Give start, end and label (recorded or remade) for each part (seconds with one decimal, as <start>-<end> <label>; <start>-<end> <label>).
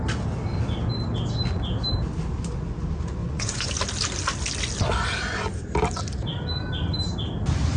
0.0-3.2 recorded; 3.2-3.7 remade; 3.7-7.8 recorded